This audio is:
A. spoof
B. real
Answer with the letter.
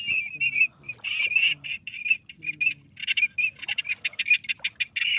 B